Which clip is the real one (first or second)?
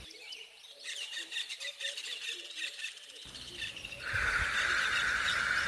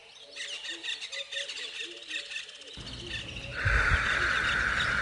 second